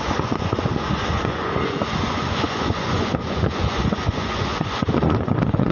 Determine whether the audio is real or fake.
fake